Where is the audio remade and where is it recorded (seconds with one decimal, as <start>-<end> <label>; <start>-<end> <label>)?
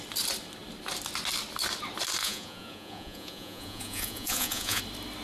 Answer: 0.0-2.2 recorded; 2.2-4.8 remade; 4.8-5.2 recorded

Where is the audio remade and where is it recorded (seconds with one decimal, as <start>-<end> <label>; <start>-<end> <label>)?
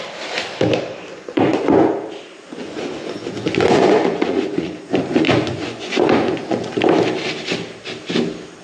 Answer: 0.0-1.1 recorded; 1.1-1.6 remade; 1.6-2.6 recorded; 2.6-6.8 remade; 6.8-8.6 recorded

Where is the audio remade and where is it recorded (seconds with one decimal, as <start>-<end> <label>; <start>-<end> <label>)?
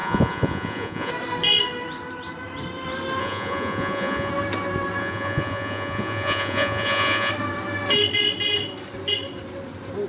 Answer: 0.0-1.1 remade; 1.1-3.2 recorded; 3.2-4.3 remade; 4.3-5.0 recorded; 5.0-7.3 remade; 7.3-10.1 recorded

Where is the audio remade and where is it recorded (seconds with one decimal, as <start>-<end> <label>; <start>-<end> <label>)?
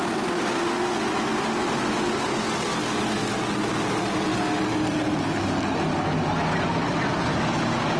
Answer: 0.0-8.0 recorded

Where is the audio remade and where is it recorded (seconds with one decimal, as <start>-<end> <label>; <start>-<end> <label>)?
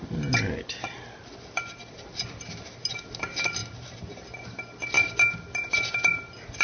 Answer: 0.0-6.6 recorded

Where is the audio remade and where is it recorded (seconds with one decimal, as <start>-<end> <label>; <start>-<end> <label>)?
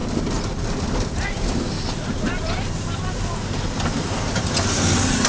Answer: 0.0-5.3 recorded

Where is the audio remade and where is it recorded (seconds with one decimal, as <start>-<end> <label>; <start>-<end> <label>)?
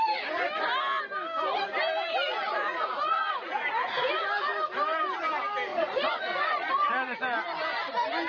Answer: 0.0-2.3 recorded; 2.3-4.1 remade; 4.1-5.7 recorded; 5.7-7.2 remade; 7.2-8.3 recorded